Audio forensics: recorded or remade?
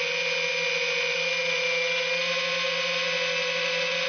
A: recorded